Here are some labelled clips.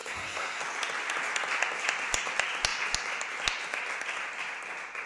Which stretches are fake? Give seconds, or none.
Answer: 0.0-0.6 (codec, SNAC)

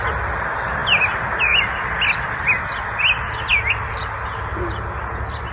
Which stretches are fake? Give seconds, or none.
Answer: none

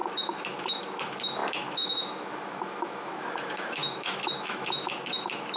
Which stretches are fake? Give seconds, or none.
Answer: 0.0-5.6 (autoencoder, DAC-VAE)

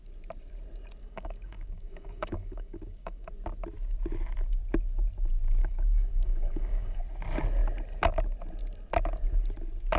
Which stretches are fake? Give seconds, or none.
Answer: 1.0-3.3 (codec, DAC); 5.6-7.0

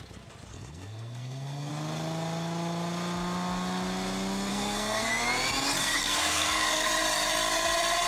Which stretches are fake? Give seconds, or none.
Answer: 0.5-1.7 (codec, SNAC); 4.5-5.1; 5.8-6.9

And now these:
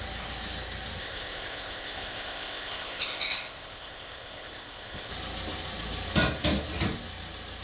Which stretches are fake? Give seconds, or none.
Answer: 1.0-5.1 (codec, ZipCodec)